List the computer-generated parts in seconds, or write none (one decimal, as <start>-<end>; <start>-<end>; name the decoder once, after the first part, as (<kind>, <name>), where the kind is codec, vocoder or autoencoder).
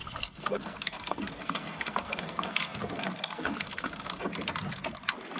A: 0.0-4.3 (codec, SNAC)